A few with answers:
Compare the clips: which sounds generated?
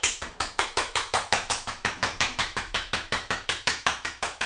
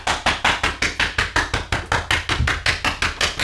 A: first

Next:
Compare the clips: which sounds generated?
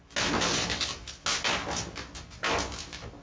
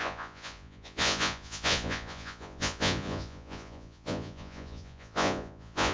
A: second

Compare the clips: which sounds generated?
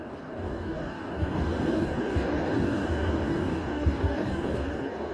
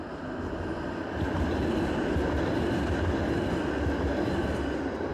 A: first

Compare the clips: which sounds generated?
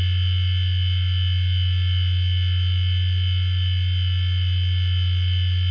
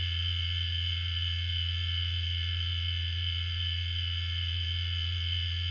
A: second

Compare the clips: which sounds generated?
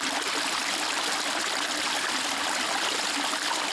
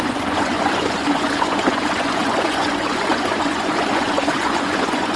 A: second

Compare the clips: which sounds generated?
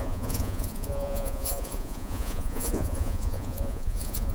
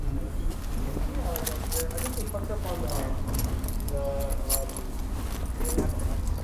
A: first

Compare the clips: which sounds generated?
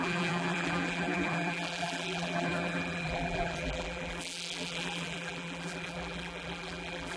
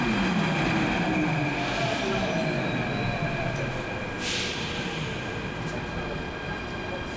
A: first